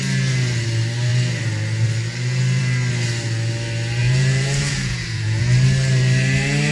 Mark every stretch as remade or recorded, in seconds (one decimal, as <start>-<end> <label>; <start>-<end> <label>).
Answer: 0.0-4.0 recorded; 4.0-5.4 remade; 5.4-6.7 recorded